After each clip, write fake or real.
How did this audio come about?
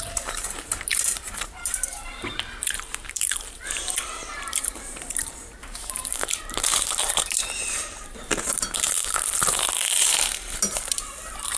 fake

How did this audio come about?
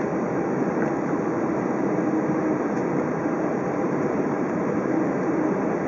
fake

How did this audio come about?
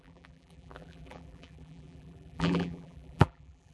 fake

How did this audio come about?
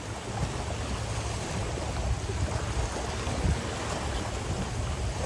real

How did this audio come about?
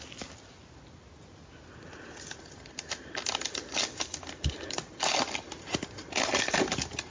real